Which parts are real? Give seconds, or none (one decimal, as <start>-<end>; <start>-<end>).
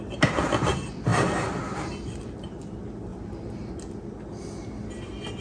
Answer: 0.0-5.4